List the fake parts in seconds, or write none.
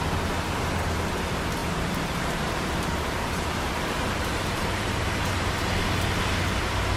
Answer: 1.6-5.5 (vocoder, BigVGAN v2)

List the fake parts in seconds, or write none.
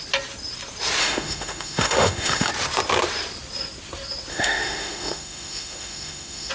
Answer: 1.0-2.5 (autoencoder, DAC-VAE); 4.3-6.5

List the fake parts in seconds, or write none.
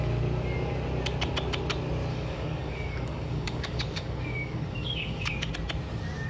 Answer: 2.1-5.5 (codec, DAC)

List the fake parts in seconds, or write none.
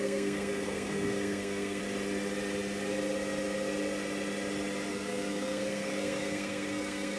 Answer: 0.0-1.8 (codec, SNAC); 4.9-7.2